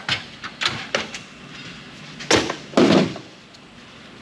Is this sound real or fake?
real